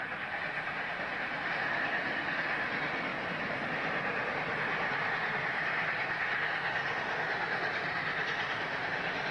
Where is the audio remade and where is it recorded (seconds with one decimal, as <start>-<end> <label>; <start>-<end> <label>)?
0.0-9.3 recorded